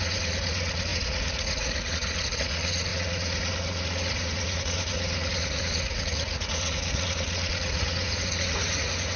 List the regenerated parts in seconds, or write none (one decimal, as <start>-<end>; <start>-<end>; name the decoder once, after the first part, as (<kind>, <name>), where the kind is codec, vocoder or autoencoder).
0.0-9.2 (vocoder, Vocos)